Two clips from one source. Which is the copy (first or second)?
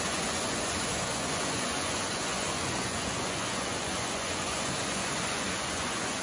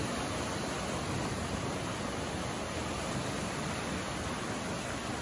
first